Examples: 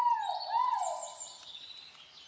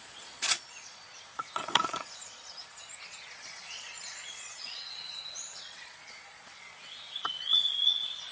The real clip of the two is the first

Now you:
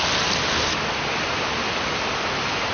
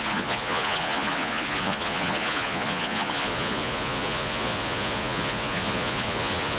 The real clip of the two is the first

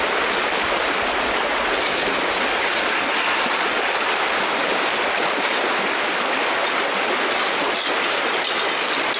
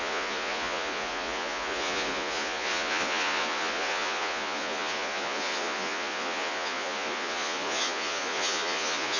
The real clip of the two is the first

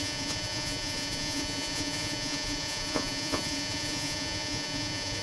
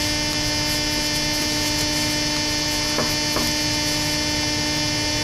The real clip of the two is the second